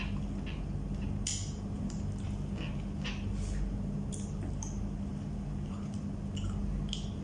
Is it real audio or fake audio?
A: real